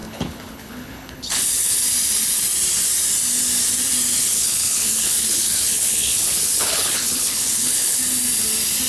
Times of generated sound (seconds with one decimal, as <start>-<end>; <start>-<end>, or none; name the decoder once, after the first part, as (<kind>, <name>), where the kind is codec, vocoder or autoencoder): 0.0-1.8 (codec, HILCodec); 4.2-8.0